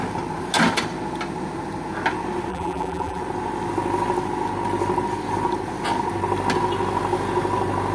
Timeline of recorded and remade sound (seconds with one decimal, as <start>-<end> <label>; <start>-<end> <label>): 0.0-2.5 recorded; 2.5-3.2 remade; 3.2-7.9 recorded

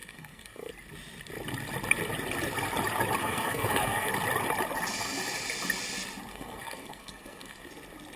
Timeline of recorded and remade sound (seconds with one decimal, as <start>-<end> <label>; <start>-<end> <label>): 0.0-0.7 remade; 0.7-3.2 recorded; 3.2-4.1 remade; 4.1-6.3 recorded; 6.3-7.7 remade; 7.7-8.2 recorded

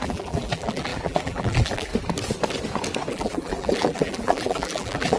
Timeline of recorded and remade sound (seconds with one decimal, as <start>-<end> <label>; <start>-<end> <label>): 0.0-1.9 remade; 1.9-3.1 recorded; 3.1-5.2 remade

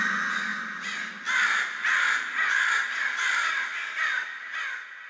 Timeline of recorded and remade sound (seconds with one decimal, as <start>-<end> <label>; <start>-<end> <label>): 0.0-5.1 recorded

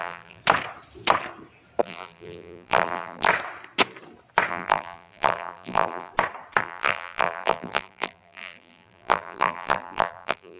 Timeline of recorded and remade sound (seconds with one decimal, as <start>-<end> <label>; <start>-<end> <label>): 0.0-0.4 remade; 0.4-1.8 recorded; 1.8-3.3 remade; 3.3-4.5 recorded; 4.5-6.1 remade; 6.1-6.6 recorded; 6.6-10.6 remade

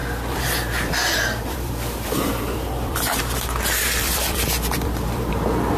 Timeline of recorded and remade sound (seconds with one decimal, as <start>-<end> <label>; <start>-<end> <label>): 0.0-3.2 remade; 3.2-4.0 recorded; 4.0-5.3 remade; 5.3-5.8 recorded

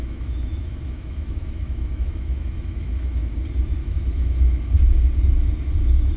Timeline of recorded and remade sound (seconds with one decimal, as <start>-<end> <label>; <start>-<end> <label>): 0.0-3.3 remade; 3.3-3.8 recorded; 3.8-4.6 remade; 4.6-6.2 recorded

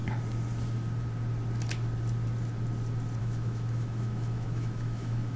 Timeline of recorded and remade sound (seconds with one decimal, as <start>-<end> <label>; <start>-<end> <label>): 0.0-3.2 recorded; 3.2-5.4 remade